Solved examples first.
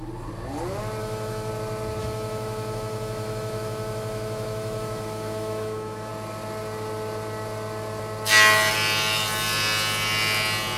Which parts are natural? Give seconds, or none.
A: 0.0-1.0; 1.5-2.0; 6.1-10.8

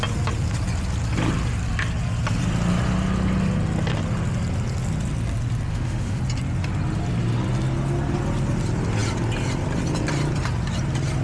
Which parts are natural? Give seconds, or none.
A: 0.0-5.7; 6.2-11.2